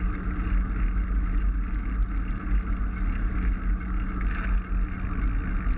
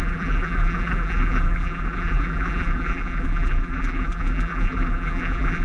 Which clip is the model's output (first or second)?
second